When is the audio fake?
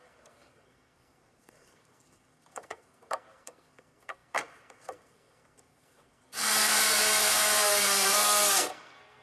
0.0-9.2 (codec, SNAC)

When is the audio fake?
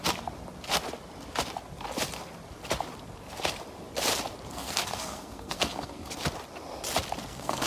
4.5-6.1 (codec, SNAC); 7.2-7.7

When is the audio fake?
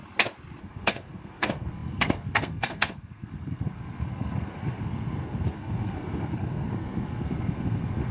0.6-8.1 (codec, SNAC)